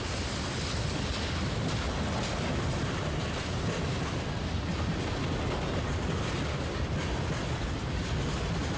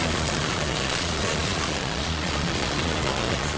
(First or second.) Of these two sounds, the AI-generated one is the second